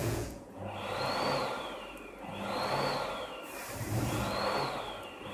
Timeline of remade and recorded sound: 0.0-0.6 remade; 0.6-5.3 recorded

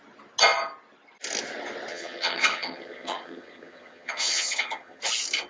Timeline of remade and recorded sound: 0.0-1.9 recorded; 1.9-5.0 remade; 5.0-5.5 recorded

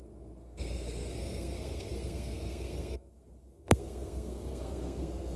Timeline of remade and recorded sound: 0.0-5.4 remade

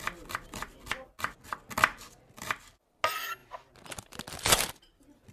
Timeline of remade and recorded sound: 0.0-5.3 recorded

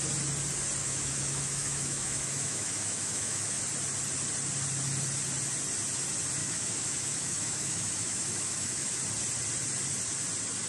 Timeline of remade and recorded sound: 0.0-0.8 recorded; 0.8-3.6 remade; 3.6-6.4 recorded; 6.4-9.0 remade; 9.0-10.7 recorded

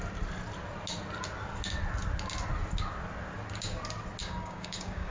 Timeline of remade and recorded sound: 0.0-4.2 recorded; 4.2-5.1 remade

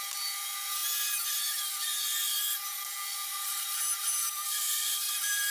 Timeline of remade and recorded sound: 0.0-4.2 recorded; 4.2-5.1 remade; 5.1-5.5 recorded